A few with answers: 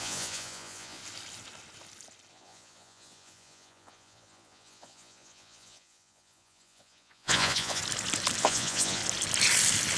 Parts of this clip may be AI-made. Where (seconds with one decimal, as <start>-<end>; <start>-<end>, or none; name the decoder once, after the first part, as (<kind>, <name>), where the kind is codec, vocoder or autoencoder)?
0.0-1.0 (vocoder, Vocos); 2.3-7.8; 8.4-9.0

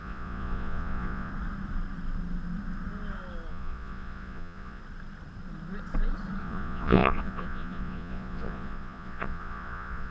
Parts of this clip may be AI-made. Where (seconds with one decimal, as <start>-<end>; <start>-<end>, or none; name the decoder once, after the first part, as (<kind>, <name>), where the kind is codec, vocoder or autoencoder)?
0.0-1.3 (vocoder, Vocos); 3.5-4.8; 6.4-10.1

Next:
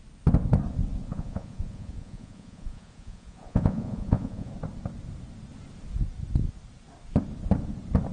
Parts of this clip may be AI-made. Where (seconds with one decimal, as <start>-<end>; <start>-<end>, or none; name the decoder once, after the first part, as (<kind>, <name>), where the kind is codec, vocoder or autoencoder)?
1.0-4.5 (vocoder, Vocos)